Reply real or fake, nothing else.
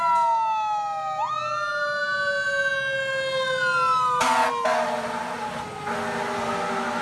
real